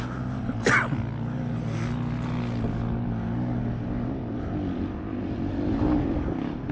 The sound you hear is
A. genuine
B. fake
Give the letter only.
A